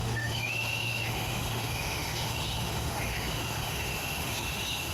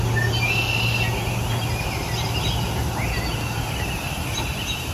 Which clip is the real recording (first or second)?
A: second